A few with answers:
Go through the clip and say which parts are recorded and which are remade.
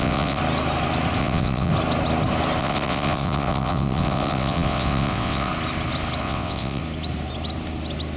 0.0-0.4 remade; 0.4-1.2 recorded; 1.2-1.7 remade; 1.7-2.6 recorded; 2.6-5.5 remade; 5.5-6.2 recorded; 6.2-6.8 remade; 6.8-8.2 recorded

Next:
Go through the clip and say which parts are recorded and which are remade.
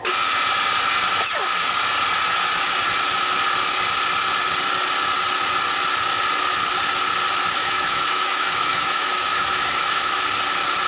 0.0-7.6 recorded; 7.6-10.2 remade; 10.2-10.9 recorded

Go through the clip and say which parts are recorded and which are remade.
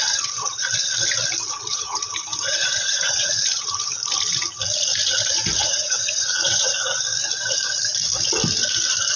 0.0-1.7 recorded; 1.7-3.3 remade; 3.3-5.6 recorded; 5.6-6.7 remade; 6.7-9.2 recorded